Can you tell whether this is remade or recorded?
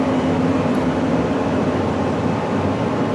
recorded